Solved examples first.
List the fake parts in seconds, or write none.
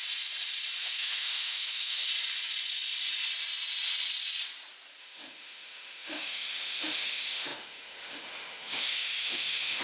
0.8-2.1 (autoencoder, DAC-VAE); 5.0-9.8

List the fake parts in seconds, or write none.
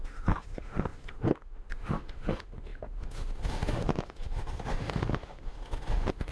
0.0-6.3 (autoencoder, DAC-VAE)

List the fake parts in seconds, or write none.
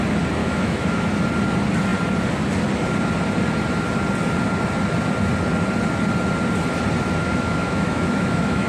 0.4-1.1 (autoencoder, DAC-VAE); 7.2-8.7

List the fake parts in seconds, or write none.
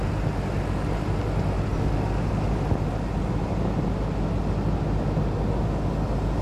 none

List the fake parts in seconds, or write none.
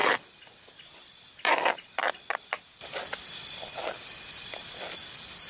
none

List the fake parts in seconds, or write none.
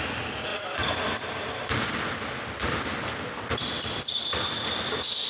none